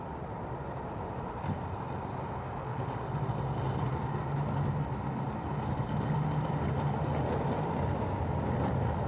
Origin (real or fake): real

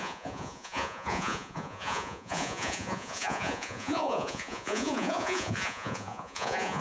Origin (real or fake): fake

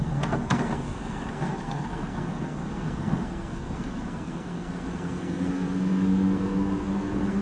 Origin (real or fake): fake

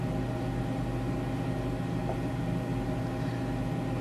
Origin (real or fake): real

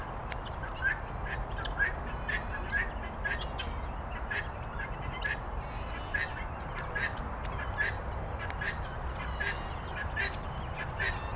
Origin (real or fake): real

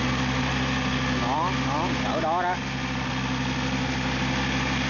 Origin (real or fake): real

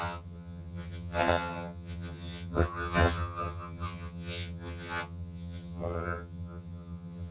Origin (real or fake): fake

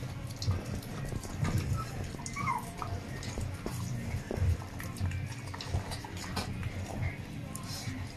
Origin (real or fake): real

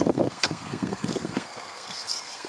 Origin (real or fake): fake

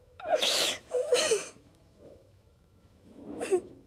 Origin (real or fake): fake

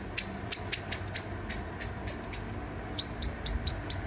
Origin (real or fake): real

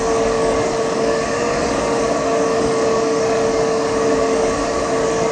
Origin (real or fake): fake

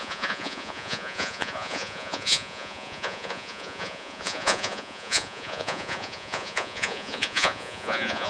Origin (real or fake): fake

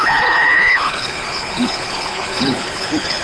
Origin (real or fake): fake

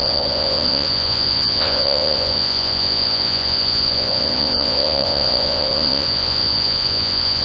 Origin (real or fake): fake